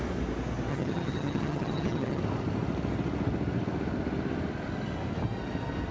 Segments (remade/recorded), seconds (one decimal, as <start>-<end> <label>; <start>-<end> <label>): 0.0-0.7 recorded; 0.7-2.2 remade; 2.2-5.9 recorded